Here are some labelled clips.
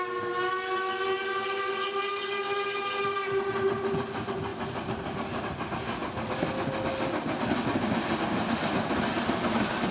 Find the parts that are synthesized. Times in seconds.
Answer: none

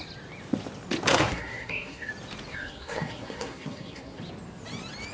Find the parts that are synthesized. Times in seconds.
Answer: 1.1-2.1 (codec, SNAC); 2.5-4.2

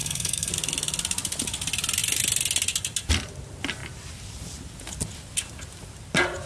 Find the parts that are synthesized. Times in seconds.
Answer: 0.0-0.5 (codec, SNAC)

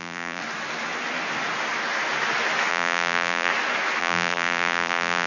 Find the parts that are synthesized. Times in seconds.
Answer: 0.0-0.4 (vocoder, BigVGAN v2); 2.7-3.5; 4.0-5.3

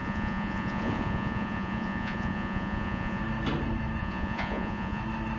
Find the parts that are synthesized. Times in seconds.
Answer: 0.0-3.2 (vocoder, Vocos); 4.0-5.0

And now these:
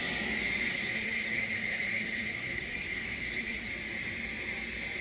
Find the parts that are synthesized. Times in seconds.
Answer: 0.7-3.7 (codec, SNAC)